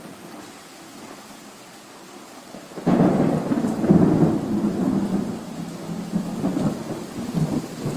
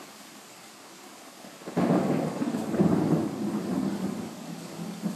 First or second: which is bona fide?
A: first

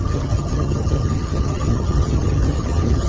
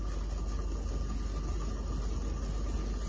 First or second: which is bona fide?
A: second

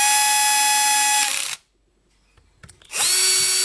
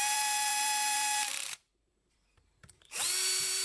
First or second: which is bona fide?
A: first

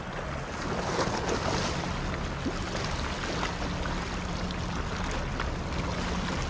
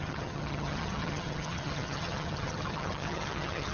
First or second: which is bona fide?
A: first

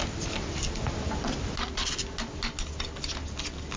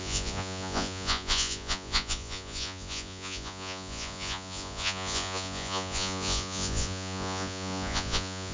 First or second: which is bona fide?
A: first